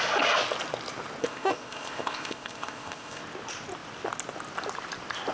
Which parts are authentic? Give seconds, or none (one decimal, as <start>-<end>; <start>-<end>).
0.0-1.2; 3.2-5.3